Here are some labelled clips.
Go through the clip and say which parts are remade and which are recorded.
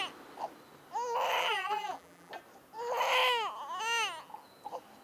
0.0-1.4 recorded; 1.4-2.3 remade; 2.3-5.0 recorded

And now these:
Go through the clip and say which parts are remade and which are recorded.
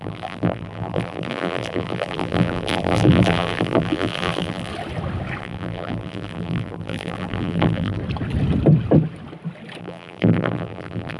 0.0-4.7 remade; 4.7-5.4 recorded; 5.4-8.0 remade; 8.0-9.8 recorded; 9.8-11.2 remade